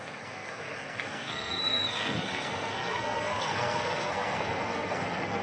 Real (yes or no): no